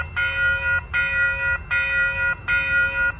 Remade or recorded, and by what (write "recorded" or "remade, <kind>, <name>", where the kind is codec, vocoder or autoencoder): recorded